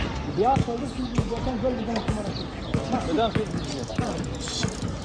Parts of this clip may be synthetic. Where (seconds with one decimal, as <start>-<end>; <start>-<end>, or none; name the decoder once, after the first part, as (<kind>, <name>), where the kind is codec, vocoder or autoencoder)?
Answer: 0.6-1.4 (codec, DAC)